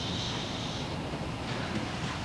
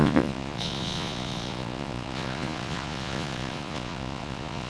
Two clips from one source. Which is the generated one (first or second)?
second